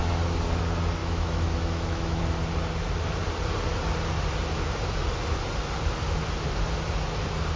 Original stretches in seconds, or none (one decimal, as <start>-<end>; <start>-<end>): 0.0-1.0; 2.2-7.6